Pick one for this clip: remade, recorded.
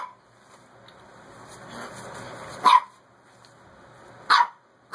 recorded